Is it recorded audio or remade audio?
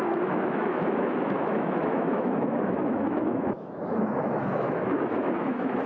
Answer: remade